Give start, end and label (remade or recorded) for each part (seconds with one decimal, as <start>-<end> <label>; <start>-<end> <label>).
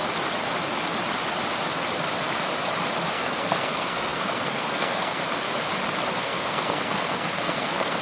0.0-3.1 recorded; 3.1-5.2 remade; 5.2-6.2 recorded; 6.2-8.0 remade